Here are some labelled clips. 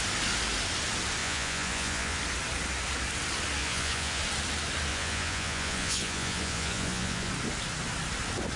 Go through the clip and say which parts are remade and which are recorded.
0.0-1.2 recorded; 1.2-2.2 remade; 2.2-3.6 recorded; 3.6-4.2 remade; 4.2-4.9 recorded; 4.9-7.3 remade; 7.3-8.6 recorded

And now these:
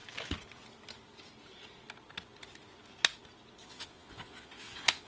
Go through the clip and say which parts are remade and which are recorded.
0.0-3.6 recorded; 3.6-5.1 remade

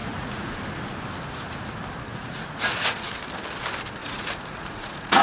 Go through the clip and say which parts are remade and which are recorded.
0.0-0.5 remade; 0.5-2.1 recorded; 2.1-3.1 remade; 3.1-4.0 recorded; 4.0-5.2 remade

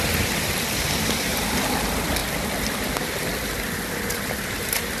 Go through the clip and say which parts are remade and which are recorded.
0.0-5.0 recorded

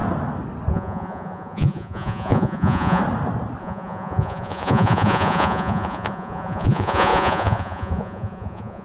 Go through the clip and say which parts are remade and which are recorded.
0.0-0.7 recorded; 0.7-3.0 remade; 3.0-3.6 recorded; 3.6-8.8 remade

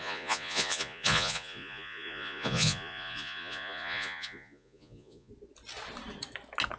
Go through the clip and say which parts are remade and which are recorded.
0.0-5.3 remade; 5.3-6.8 recorded

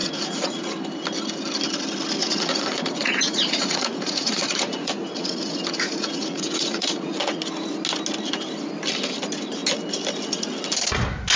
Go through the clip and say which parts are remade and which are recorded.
0.0-0.7 remade; 0.7-2.2 recorded; 2.2-7.4 remade; 7.4-11.4 recorded

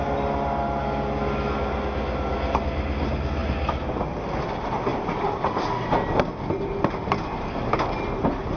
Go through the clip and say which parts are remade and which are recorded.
0.0-8.6 recorded